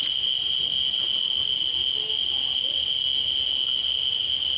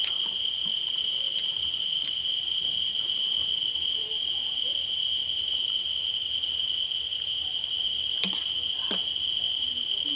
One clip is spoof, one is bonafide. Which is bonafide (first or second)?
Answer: first